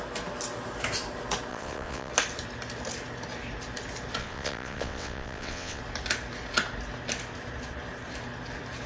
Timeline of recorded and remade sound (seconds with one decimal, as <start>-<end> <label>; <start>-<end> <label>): 0.0-1.5 recorded; 1.5-2.1 remade; 2.1-4.2 recorded; 4.2-5.8 remade; 5.8-8.9 recorded